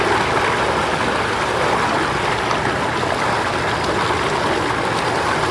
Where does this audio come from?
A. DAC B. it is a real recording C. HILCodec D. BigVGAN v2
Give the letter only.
B